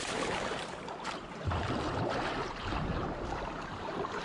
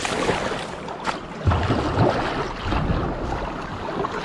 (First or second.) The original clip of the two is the second